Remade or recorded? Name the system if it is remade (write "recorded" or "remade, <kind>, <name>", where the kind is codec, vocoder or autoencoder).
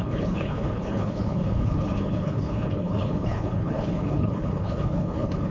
remade, codec, HILCodec